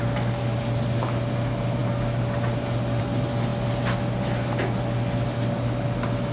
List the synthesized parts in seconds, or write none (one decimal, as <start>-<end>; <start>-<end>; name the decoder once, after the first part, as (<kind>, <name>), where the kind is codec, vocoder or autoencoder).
none